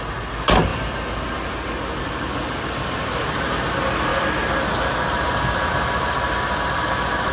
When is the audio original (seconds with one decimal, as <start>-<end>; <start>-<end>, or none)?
0.0-7.3